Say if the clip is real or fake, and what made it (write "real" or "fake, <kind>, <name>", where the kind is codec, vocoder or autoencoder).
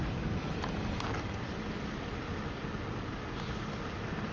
real